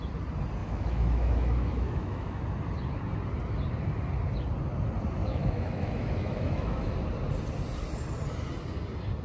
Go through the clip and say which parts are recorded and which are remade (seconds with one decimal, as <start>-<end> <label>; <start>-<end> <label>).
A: 0.0-0.6 recorded; 0.6-2.4 remade; 2.4-5.2 recorded; 5.2-6.9 remade; 6.9-9.2 recorded